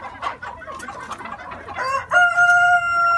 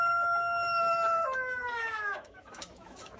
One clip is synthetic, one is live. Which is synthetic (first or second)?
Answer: second